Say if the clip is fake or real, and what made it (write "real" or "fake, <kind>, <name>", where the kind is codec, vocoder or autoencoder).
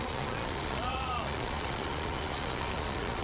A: fake, vocoder, Vocos